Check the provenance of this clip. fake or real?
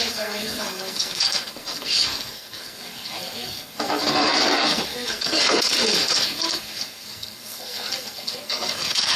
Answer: fake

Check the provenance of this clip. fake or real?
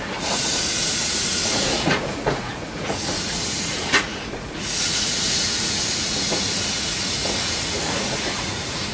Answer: fake